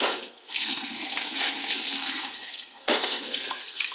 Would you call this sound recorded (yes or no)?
no